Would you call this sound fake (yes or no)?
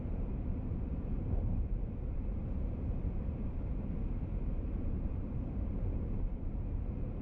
yes